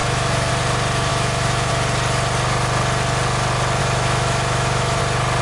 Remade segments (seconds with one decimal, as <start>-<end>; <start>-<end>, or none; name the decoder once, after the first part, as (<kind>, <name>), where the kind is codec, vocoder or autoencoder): 0.0-0.5 (autoencoder, DAC-VAE); 1.1-1.7; 3.8-5.0

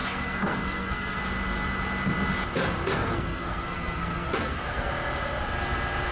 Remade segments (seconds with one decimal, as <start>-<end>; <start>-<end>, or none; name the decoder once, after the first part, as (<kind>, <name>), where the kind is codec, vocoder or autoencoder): 0.0-1.2 (codec, SNAC); 2.9-4.9

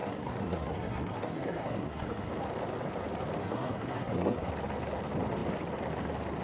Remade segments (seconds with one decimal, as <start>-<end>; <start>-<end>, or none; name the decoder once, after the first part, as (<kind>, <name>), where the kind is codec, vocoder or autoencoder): 0.0-2.3 (codec, SNAC); 3.4-4.5

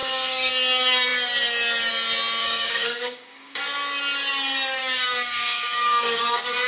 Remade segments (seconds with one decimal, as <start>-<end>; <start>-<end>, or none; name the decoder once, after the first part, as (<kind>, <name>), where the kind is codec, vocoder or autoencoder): 0.0-0.5 (codec, DAC); 2.4-3.6; 4.8-6.2